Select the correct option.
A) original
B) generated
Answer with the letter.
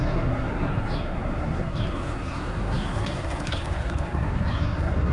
B